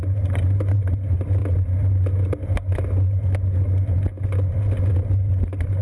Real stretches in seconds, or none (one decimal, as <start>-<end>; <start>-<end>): 1.4-4.9